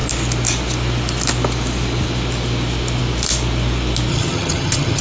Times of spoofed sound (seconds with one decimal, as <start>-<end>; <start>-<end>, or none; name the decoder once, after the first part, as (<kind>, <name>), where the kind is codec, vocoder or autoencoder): 4.1-5.0 (vocoder, HiFi-GAN)